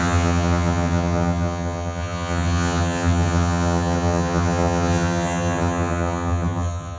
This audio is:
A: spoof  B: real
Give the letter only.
A